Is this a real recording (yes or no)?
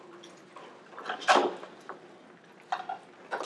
yes